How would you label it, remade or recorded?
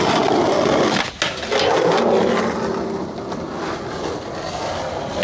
recorded